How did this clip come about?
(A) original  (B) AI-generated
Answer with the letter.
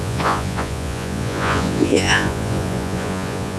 B